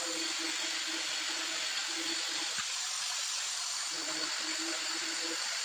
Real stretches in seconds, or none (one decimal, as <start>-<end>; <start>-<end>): 0.0-1.8; 4.8-5.6